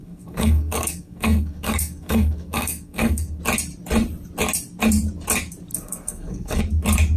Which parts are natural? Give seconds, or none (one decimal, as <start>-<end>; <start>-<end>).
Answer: 3.4-5.7; 6.6-7.2